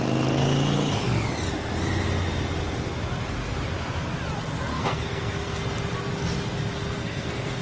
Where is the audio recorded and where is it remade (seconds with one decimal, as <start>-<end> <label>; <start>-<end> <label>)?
0.0-4.7 recorded; 4.7-5.6 remade; 5.6-7.0 recorded; 7.0-7.6 remade